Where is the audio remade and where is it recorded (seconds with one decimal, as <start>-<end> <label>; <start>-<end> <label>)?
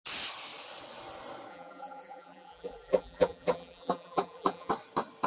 0.0-1.5 recorded; 1.5-4.7 remade; 4.7-5.3 recorded